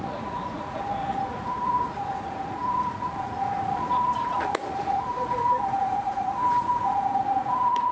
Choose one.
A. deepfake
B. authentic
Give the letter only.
A